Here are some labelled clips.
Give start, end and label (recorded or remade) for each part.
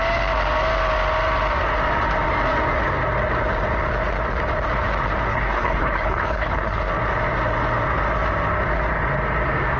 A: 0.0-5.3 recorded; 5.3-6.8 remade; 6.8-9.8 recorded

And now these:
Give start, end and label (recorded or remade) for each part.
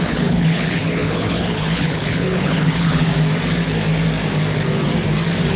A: 0.0-3.1 remade; 3.1-5.6 recorded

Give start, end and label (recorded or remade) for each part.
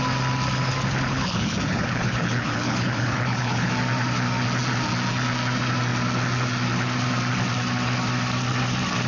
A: 0.0-1.1 recorded; 1.1-3.7 remade; 3.7-9.1 recorded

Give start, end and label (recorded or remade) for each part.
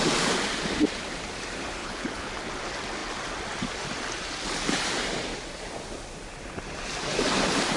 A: 0.0-1.8 recorded; 1.8-2.3 remade; 2.3-7.8 recorded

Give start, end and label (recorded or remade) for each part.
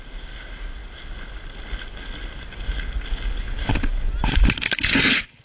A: 0.0-5.4 recorded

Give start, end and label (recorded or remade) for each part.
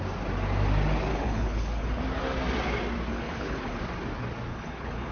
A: 0.0-1.1 recorded; 1.1-2.0 remade; 2.0-3.1 recorded; 3.1-3.8 remade; 3.8-4.5 recorded; 4.5-5.1 remade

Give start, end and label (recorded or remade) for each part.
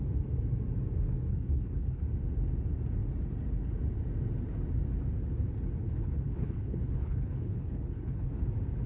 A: 0.0-1.3 recorded; 1.3-2.0 remade; 2.0-5.8 recorded; 5.8-8.3 remade; 8.3-8.9 recorded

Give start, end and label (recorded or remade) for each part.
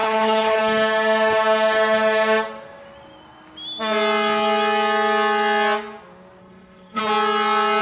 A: 0.0-0.6 remade; 0.6-6.4 recorded; 6.4-7.0 remade; 7.0-7.8 recorded